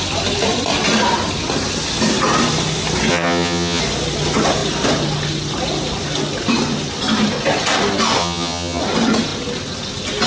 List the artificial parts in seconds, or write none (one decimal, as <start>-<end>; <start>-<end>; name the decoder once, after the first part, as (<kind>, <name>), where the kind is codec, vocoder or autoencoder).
3.1-3.8 (vocoder, HiFi-GAN); 8.2-8.8